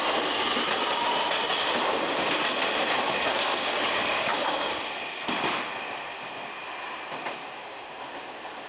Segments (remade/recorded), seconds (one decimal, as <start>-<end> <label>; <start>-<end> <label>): 0.0-3.3 recorded; 3.3-4.7 remade; 4.7-8.7 recorded